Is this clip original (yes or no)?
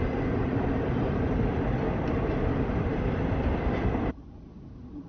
no